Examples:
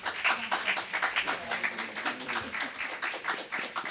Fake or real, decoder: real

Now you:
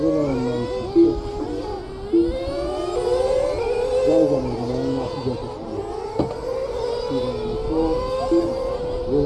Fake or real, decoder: real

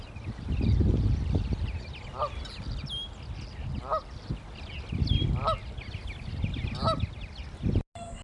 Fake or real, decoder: real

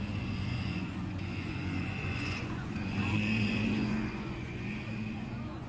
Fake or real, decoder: fake, vocoder, Vocos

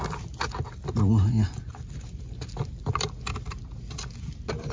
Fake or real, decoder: real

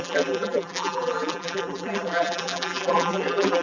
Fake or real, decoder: fake, vocoder, BigVGAN v2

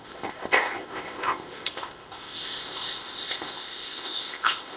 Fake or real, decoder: fake, codec, ZipCodec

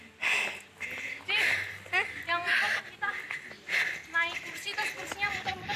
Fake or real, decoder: real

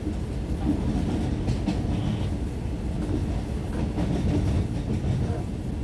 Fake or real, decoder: real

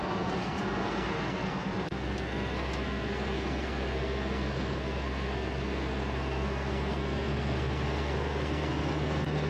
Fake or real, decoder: fake, codec, SNAC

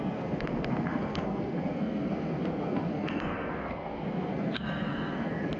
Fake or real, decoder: fake, codec, SNAC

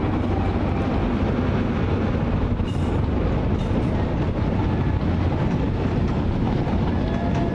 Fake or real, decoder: real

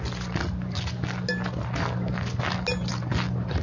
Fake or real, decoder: real